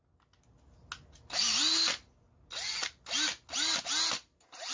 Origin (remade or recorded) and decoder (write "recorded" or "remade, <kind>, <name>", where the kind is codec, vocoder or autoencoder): recorded